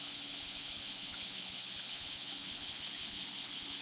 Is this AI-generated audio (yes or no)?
no